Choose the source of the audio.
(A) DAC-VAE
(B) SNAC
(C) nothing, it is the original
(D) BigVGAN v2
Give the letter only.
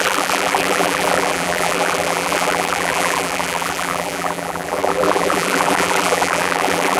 D